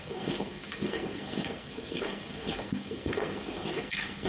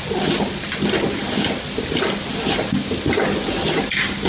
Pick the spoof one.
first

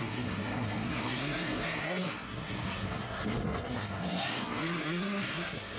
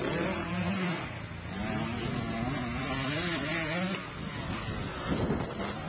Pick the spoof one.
first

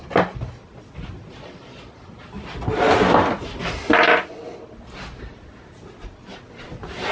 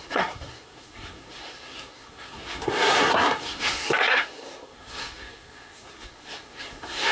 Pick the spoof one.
second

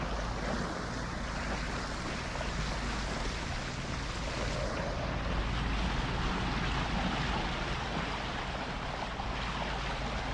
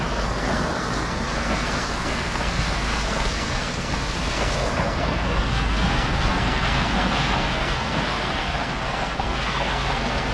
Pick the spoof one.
second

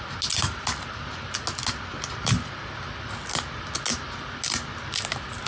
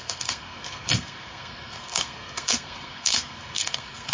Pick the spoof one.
second